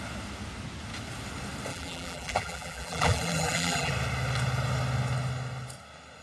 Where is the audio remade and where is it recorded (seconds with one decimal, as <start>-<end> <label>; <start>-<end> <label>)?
0.0-1.7 recorded; 1.7-3.9 remade; 3.9-6.2 recorded